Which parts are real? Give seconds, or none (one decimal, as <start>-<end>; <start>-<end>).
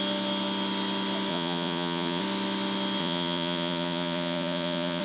0.0-1.3; 2.2-3.0